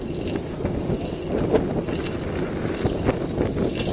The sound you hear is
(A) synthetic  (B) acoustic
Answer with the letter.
B